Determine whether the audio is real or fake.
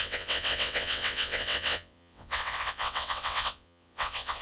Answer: fake